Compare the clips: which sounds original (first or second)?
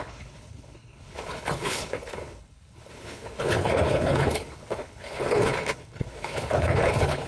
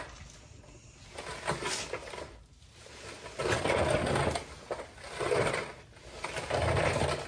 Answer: second